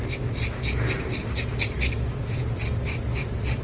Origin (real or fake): real